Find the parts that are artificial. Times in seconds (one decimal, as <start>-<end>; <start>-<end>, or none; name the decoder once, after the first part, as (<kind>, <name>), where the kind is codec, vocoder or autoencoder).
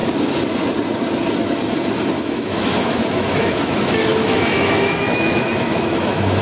2.2-6.4 (autoencoder, DAC-VAE)